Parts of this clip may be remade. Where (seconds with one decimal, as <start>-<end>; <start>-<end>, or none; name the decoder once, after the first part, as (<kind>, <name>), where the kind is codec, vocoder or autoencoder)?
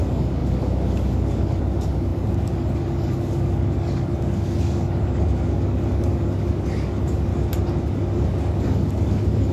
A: 0.0-7.3 (codec, DAC); 7.8-9.5